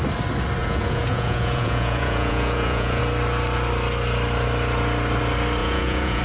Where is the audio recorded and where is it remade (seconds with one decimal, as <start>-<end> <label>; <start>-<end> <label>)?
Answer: 0.0-0.6 recorded; 0.6-3.0 remade; 3.0-5.6 recorded; 5.6-6.2 remade